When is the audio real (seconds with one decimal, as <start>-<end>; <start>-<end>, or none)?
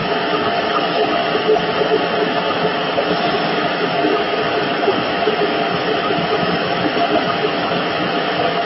1.2-2.2